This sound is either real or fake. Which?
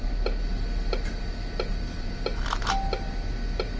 real